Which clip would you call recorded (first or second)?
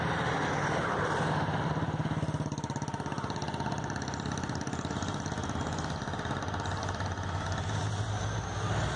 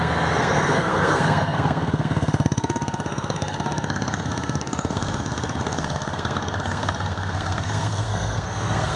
first